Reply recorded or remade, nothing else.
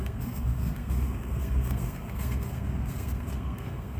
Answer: remade